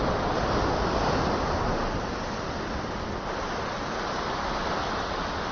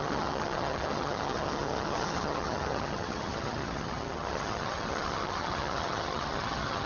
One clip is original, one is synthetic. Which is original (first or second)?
first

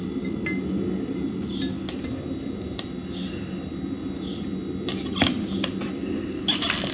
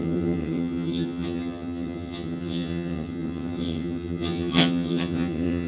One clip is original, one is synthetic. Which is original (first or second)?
first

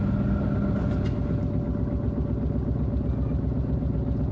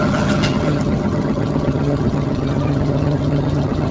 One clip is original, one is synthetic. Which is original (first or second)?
first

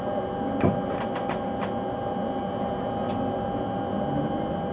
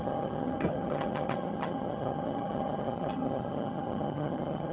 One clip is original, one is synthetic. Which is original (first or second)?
first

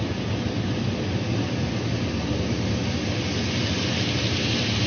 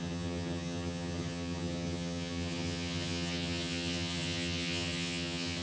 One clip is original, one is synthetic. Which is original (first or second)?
first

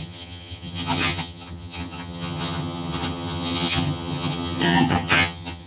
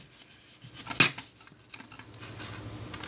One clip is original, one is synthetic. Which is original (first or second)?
second